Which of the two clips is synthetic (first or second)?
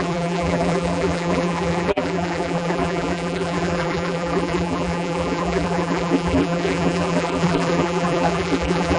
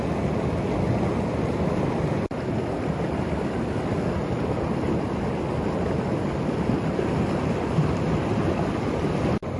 first